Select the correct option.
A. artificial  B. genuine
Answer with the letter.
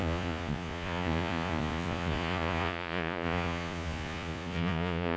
A